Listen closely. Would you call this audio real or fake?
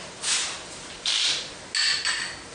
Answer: real